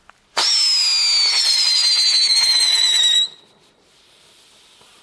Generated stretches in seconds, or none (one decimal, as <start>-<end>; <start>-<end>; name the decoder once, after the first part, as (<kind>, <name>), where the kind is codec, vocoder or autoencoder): 1.4-1.8 (vocoder, BigVGAN v2); 3.7-5.0